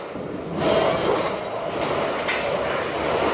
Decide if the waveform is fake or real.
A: real